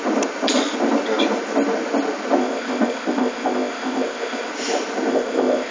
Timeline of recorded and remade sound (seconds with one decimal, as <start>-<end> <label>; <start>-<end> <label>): 0.0-2.4 recorded; 2.4-4.5 remade; 4.5-5.1 recorded; 5.1-5.7 remade